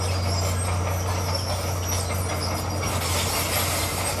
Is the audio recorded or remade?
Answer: recorded